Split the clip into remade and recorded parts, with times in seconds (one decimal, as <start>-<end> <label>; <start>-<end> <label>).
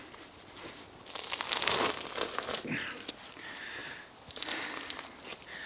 0.0-3.8 remade; 3.8-5.7 recorded